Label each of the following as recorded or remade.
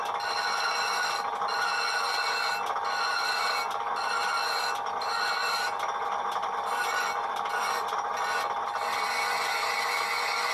recorded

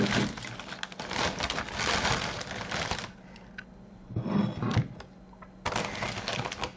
recorded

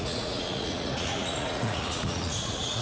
remade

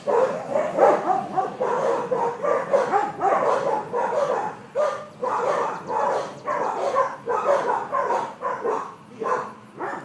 recorded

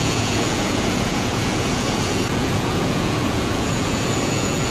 remade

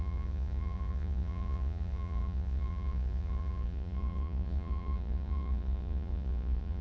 remade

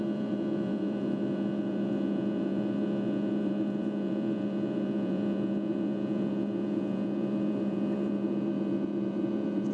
remade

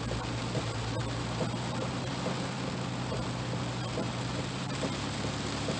recorded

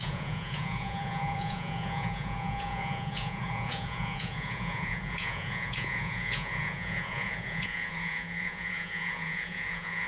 remade